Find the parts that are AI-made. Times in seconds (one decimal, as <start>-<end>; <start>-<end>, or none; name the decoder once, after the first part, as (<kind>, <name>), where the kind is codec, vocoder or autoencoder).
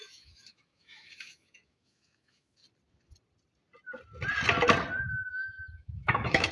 0.0-2.6 (autoencoder, DAC-VAE); 5.1-6.5